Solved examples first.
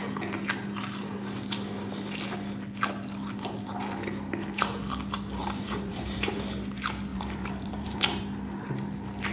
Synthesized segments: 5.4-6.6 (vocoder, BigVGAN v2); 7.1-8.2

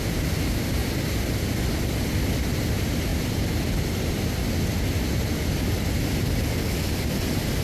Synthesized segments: none